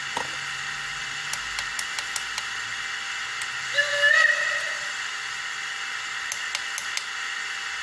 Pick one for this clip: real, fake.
real